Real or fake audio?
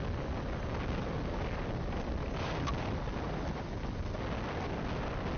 real